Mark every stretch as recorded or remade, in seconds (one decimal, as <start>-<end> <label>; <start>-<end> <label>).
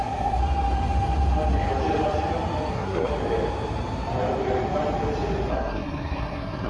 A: 0.0-0.4 remade; 0.4-2.7 recorded; 2.7-3.1 remade; 3.1-5.5 recorded; 5.5-6.7 remade